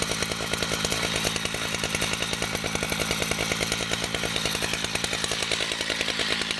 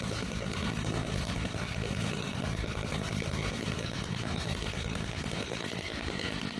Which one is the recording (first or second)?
first